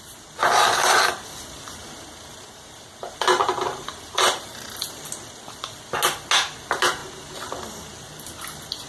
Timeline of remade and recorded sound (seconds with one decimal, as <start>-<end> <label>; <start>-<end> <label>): 0.0-1.8 recorded; 1.8-4.8 remade; 4.8-8.9 recorded